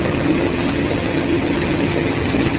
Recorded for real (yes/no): no